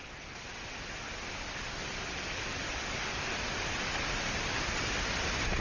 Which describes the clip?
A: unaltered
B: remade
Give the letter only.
B